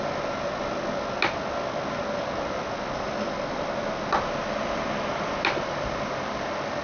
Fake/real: real